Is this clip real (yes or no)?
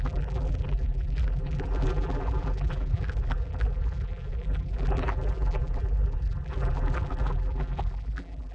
no